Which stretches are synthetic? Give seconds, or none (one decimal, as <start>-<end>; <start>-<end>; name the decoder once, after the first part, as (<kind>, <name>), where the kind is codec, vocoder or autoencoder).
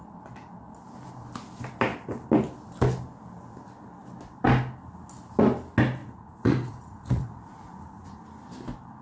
6.0-8.2 (vocoder, Vocos)